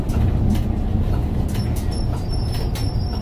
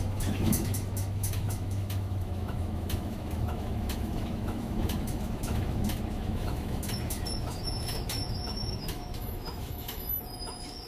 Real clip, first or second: first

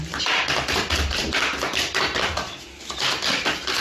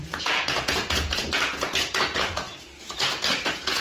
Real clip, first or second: first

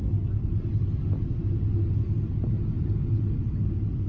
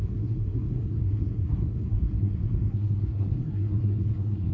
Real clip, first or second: first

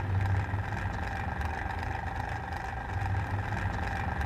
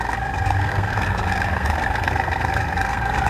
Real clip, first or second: first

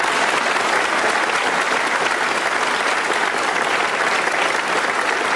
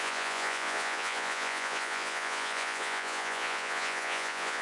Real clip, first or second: first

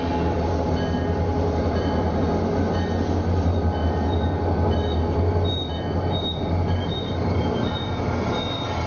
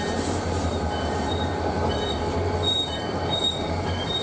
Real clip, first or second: first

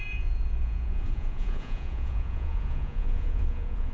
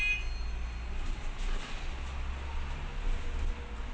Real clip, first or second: second